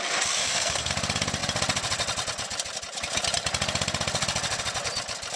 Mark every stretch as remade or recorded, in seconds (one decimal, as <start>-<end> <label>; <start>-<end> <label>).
0.0-0.4 recorded; 0.4-0.9 remade; 0.9-5.4 recorded